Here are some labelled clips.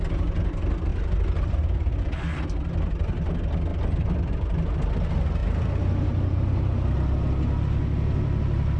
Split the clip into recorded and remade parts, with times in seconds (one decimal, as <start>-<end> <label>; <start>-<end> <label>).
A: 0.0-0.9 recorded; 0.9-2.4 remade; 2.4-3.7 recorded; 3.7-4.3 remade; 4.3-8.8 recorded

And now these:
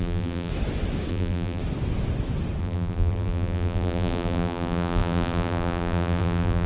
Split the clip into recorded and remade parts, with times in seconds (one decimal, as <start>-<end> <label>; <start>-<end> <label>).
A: 0.0-0.5 remade; 0.5-1.1 recorded; 1.1-1.6 remade; 1.6-2.6 recorded; 2.6-6.7 remade

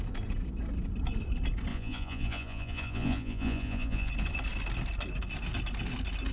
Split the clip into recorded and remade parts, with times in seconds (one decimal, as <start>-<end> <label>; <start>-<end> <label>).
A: 0.0-1.7 recorded; 1.7-4.1 remade; 4.1-6.3 recorded